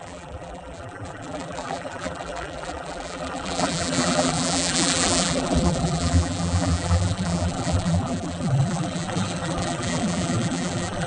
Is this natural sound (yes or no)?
no